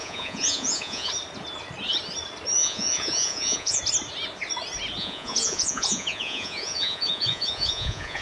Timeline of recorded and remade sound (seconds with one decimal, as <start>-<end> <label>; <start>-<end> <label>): 0.0-1.1 remade; 1.1-2.6 recorded; 2.6-3.8 remade; 3.8-5.0 recorded; 5.0-8.2 remade